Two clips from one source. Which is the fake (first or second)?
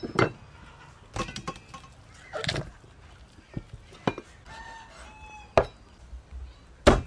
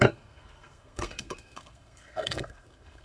second